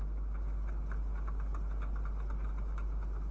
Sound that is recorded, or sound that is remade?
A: recorded